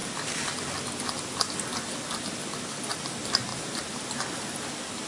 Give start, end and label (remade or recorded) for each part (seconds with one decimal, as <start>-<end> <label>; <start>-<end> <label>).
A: 0.0-5.1 recorded